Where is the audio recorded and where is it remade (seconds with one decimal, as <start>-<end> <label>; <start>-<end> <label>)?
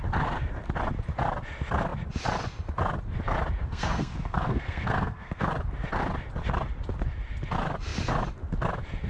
0.0-3.6 recorded; 3.6-5.5 remade; 5.5-9.1 recorded